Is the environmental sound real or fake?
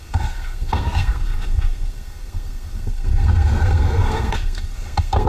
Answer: fake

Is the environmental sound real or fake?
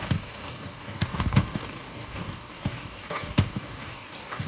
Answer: fake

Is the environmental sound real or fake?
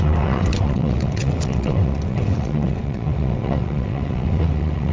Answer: fake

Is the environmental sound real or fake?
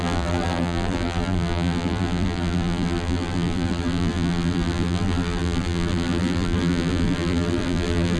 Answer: fake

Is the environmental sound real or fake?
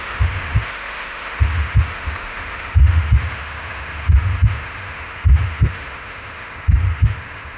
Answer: fake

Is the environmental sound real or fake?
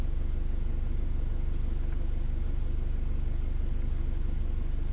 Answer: real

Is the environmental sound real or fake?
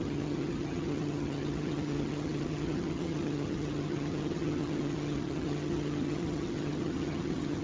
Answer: fake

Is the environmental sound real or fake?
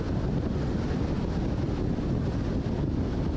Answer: real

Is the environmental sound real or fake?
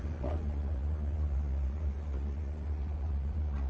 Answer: fake